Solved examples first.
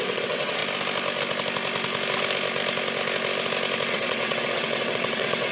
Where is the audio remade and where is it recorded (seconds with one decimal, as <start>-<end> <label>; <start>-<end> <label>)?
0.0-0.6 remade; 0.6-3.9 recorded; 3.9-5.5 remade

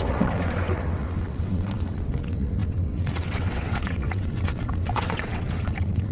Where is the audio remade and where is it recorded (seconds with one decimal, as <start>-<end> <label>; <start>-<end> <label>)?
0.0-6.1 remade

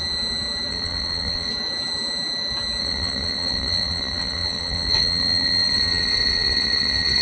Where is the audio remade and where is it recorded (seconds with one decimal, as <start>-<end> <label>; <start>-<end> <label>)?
0.0-0.7 recorded; 0.7-1.5 remade; 1.5-2.8 recorded; 2.8-7.2 remade

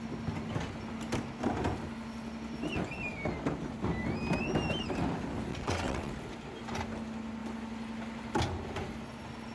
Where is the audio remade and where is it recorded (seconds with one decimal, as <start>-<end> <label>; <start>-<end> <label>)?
0.0-5.5 recorded; 5.5-6.1 remade; 6.1-9.5 recorded

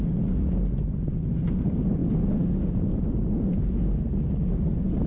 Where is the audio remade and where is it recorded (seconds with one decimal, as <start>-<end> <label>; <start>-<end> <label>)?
0.0-5.1 recorded

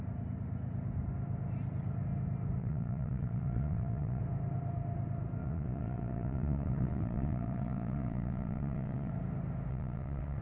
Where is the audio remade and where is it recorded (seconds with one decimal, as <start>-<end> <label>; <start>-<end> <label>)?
0.0-2.6 recorded; 2.6-4.2 remade; 4.2-5.4 recorded; 5.4-9.1 remade; 9.1-9.7 recorded; 9.7-10.4 remade

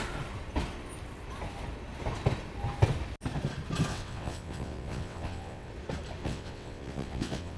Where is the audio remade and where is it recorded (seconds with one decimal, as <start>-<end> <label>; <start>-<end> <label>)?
0.0-3.9 recorded; 3.9-5.7 remade; 5.7-6.2 recorded; 6.2-7.6 remade